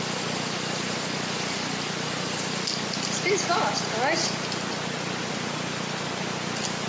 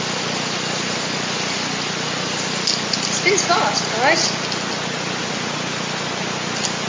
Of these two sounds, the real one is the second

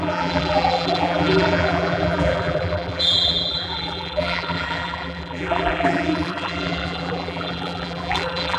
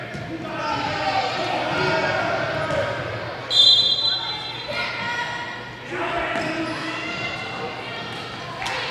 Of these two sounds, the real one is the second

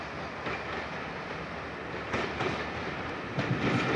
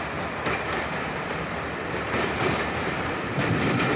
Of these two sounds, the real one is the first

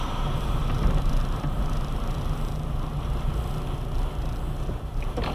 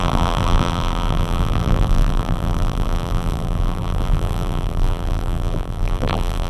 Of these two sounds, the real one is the first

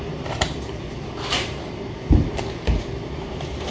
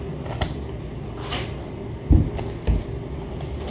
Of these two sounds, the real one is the second